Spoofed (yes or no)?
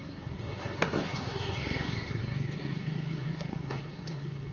yes